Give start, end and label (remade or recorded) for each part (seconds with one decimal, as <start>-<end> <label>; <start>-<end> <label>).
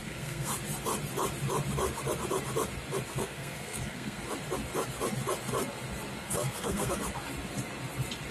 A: 0.0-0.5 remade; 0.5-3.1 recorded; 3.1-4.2 remade; 4.2-6.2 recorded; 6.2-7.0 remade; 7.0-8.3 recorded